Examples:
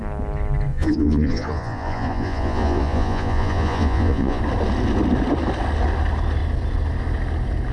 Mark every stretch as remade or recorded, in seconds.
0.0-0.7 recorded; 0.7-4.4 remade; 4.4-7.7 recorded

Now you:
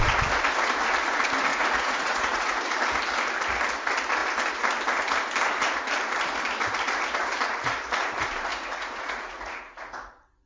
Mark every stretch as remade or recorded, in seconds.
0.0-1.5 recorded; 1.5-2.6 remade; 2.6-8.5 recorded; 8.5-10.1 remade; 10.1-10.5 recorded